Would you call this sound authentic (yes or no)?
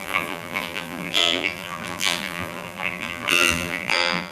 no